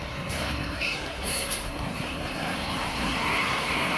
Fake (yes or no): yes